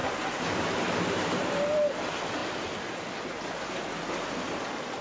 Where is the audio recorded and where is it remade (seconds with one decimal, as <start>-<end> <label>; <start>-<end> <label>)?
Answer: 0.0-1.9 remade; 1.9-5.0 recorded